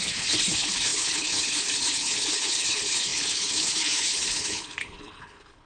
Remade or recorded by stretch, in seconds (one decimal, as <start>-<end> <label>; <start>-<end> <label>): 0.0-5.7 remade